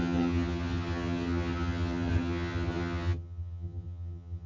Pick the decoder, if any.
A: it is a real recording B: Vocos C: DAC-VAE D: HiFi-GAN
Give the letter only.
D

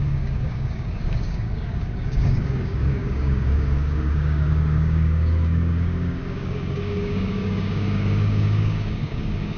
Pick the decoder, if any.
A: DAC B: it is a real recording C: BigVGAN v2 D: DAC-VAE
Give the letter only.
A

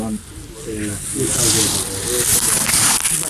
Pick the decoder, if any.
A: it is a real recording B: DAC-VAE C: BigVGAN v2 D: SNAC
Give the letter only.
A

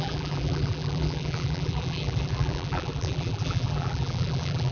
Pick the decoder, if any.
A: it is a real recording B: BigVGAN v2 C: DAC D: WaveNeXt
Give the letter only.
B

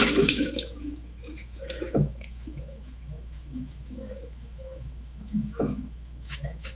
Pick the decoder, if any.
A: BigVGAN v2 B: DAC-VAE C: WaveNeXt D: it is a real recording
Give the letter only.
B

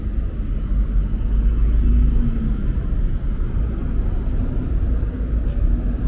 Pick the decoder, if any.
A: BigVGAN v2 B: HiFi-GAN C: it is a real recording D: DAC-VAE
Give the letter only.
C